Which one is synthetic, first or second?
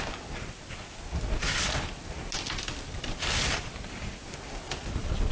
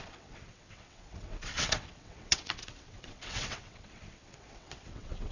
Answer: second